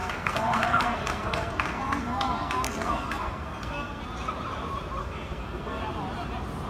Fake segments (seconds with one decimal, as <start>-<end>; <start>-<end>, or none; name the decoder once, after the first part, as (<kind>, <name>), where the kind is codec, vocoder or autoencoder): 0.0-4.0 (codec, SNAC); 5.0-5.8